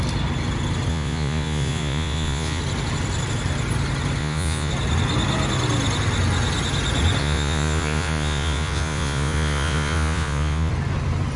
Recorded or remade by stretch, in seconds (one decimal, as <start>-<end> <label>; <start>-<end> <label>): 0.0-0.9 recorded; 0.9-2.6 remade; 2.6-4.2 recorded; 4.2-4.7 remade; 4.7-7.2 recorded; 7.2-10.7 remade; 10.7-11.4 recorded